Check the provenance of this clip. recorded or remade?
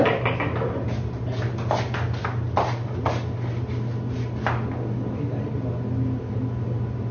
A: recorded